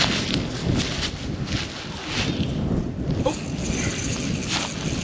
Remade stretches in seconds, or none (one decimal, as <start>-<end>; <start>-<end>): none